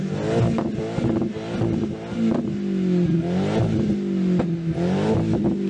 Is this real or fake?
real